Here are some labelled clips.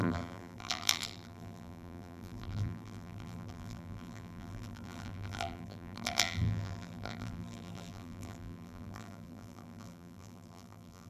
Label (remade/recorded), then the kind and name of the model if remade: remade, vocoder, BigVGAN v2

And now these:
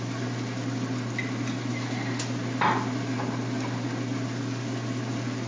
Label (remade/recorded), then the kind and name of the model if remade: recorded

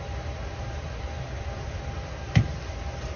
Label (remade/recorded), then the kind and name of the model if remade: remade, vocoder, BigVGAN v2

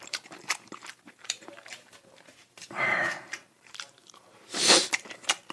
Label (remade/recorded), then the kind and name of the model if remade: remade, vocoder, BigVGAN v2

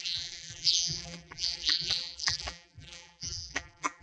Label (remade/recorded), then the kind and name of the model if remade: remade, vocoder, BigVGAN v2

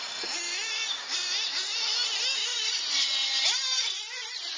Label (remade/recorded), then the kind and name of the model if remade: recorded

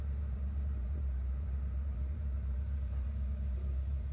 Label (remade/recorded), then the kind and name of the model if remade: remade, vocoder, BigVGAN v2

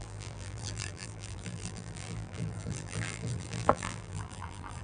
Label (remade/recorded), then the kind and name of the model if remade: remade, vocoder, BigVGAN v2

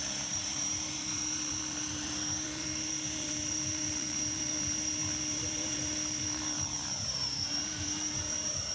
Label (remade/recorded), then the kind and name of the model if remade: remade, vocoder, BigVGAN v2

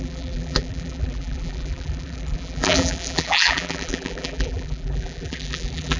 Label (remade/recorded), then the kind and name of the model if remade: remade, vocoder, BigVGAN v2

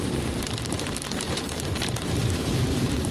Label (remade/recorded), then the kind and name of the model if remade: remade, vocoder, BigVGAN v2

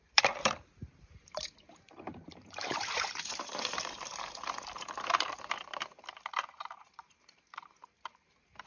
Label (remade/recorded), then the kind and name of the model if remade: remade, vocoder, BigVGAN v2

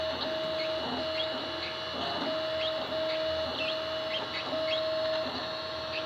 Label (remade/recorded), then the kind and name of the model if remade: recorded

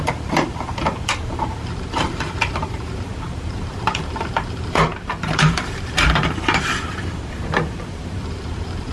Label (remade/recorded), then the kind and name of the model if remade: remade, vocoder, BigVGAN v2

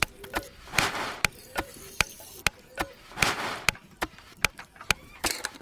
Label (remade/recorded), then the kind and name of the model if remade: remade, vocoder, BigVGAN v2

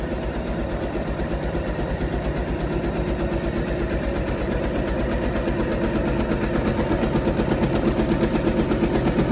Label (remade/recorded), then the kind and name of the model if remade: recorded